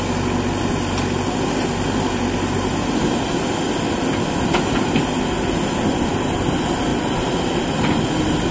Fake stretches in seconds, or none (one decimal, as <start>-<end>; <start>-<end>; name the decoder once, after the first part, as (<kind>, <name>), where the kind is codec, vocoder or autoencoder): none